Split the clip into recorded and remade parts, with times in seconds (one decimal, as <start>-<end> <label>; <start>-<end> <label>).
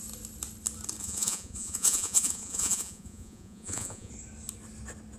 0.0-1.0 recorded; 1.0-4.1 remade; 4.1-5.2 recorded